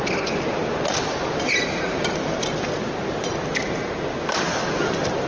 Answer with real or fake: real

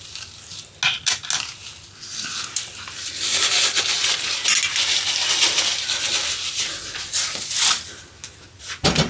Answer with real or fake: real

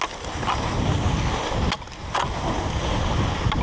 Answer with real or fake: real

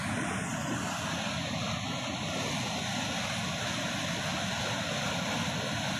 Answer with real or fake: real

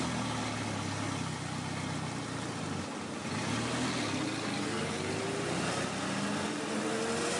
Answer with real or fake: real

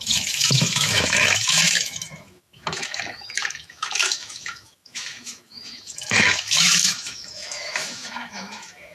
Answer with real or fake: fake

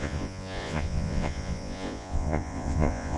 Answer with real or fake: fake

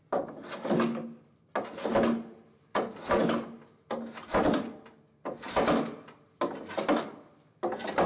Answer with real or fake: real